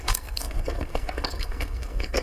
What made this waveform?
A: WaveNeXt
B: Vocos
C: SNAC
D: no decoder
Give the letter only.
C